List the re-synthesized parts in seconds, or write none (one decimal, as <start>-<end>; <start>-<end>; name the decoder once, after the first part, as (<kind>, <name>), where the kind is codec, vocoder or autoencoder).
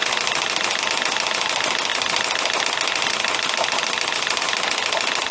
none